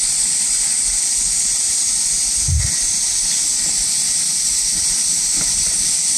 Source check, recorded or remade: recorded